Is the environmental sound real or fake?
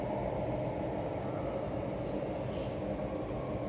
real